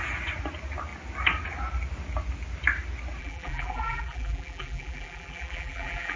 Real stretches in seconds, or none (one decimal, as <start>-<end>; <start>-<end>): 0.0-3.2